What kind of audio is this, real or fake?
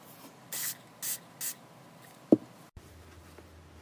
real